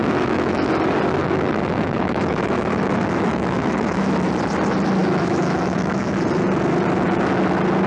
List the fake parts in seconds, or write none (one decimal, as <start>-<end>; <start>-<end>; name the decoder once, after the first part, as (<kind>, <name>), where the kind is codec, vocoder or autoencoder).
0.0-0.7 (autoencoder, DAC-VAE); 1.2-4.1; 5.0-6.1